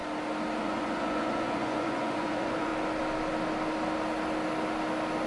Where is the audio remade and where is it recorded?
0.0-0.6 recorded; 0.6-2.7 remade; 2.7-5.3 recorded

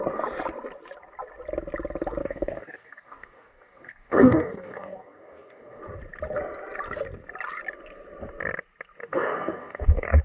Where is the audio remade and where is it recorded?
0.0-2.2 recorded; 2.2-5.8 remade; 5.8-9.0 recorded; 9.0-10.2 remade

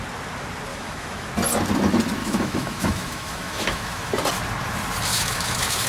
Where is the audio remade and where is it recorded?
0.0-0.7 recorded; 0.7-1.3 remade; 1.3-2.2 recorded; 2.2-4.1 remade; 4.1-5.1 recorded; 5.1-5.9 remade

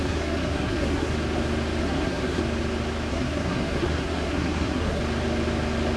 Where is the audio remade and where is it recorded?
0.0-1.1 remade; 1.1-1.8 recorded; 1.8-2.4 remade; 2.4-3.1 recorded; 3.1-5.0 remade; 5.0-6.0 recorded

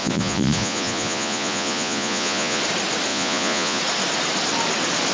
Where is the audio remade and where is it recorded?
0.0-2.6 remade; 2.6-3.1 recorded; 3.1-3.8 remade; 3.8-5.1 recorded

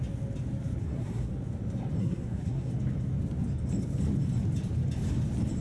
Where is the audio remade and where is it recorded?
0.0-0.8 recorded; 0.8-1.3 remade; 1.3-2.0 recorded; 2.0-2.7 remade; 2.7-5.6 recorded

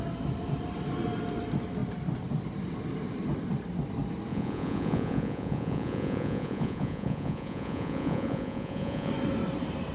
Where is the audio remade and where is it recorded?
0.0-4.3 recorded; 4.3-9.1 remade; 9.1-9.9 recorded